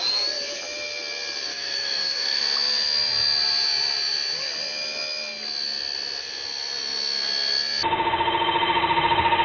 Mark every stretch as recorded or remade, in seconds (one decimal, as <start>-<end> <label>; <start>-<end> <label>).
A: 0.0-1.5 recorded; 1.5-2.4 remade; 2.4-9.4 recorded